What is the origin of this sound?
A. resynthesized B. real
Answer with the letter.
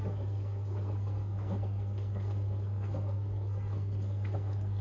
A